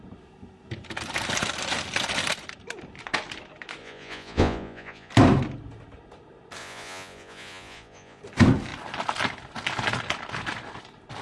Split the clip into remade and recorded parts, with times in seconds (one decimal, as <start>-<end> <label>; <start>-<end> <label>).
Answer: 0.0-3.8 recorded; 3.8-5.1 remade; 5.1-6.6 recorded; 6.6-8.2 remade; 8.2-11.2 recorded